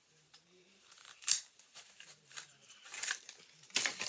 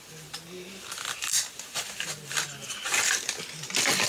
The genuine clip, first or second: second